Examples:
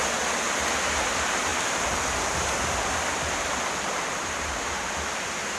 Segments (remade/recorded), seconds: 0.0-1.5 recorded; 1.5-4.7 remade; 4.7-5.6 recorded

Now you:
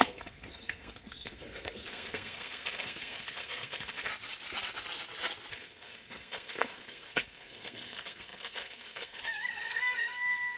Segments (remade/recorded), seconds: 0.0-4.1 remade; 4.1-5.5 recorded; 5.5-10.6 remade

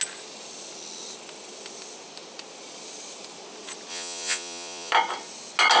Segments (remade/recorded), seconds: 0.0-3.9 recorded; 3.9-4.9 remade; 4.9-5.8 recorded

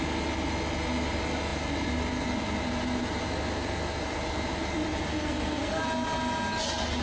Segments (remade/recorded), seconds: 0.0-5.1 recorded; 5.1-5.8 remade; 5.8-7.0 recorded

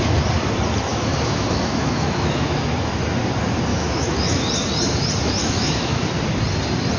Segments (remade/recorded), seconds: 0.0-0.9 recorded; 0.9-2.6 remade; 2.6-3.7 recorded; 3.7-4.5 remade; 4.5-5.4 recorded; 5.4-6.1 remade; 6.1-7.0 recorded